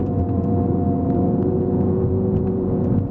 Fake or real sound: fake